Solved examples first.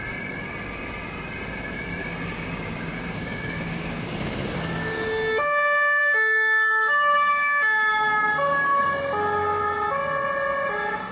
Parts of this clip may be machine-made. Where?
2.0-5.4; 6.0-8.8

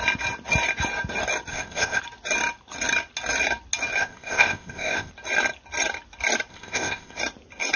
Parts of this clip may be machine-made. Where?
1.5-2.0; 4.0-5.1; 6.5-7.2

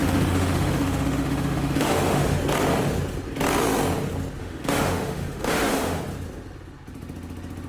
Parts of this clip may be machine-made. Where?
0.0-2.4; 4.4-6.0

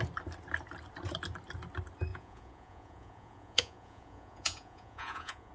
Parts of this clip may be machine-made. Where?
2.1-5.5